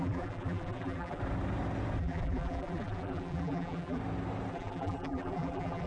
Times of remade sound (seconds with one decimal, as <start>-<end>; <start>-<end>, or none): 0.0-1.2; 2.0-4.0; 4.5-5.9